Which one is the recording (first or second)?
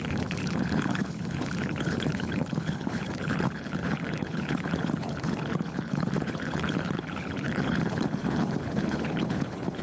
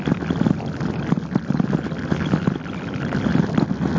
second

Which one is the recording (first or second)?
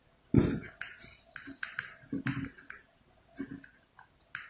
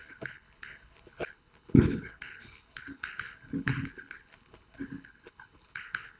first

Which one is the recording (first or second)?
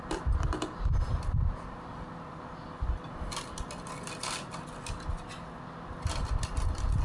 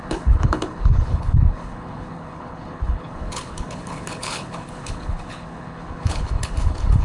first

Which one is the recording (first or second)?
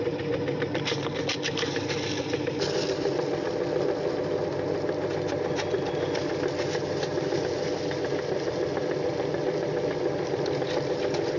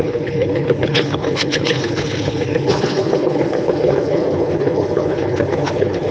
first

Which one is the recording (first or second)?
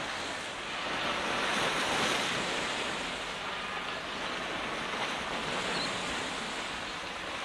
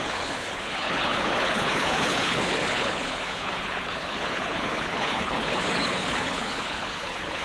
first